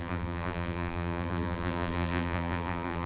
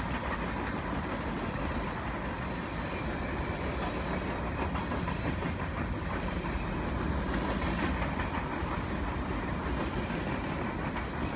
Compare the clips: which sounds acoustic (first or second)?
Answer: second